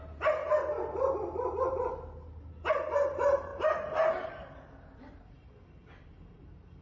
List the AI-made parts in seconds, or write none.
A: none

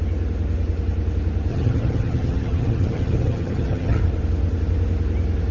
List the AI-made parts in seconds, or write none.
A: 1.5-4.0 (vocoder, HiFi-GAN)

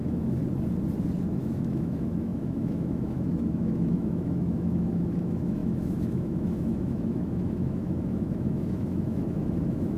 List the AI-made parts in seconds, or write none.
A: 0.0-0.4 (autoencoder, DAC-VAE); 1.3-10.0